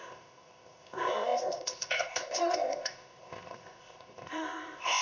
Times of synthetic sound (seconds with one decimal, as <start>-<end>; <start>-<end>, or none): 0.0-5.0